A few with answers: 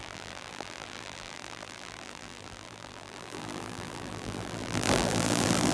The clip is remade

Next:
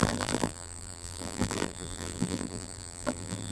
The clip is remade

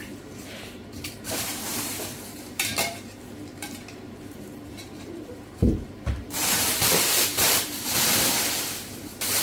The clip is remade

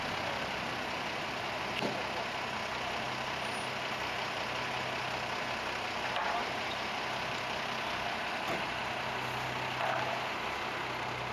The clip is recorded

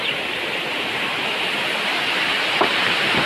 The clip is recorded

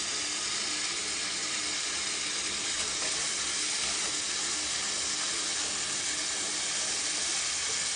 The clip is recorded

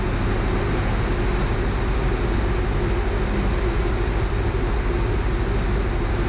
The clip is recorded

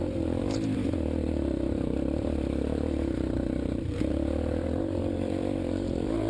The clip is remade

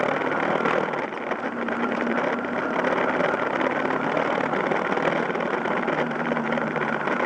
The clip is remade